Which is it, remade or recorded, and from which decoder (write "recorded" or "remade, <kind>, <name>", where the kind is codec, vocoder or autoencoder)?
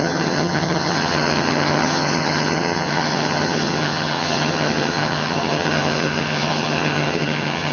remade, vocoder, HiFi-GAN